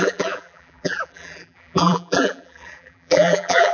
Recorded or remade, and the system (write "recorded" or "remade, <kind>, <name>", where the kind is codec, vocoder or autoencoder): remade, vocoder, BigVGAN v2